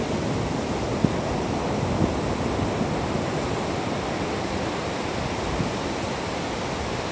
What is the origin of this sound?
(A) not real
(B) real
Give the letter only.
B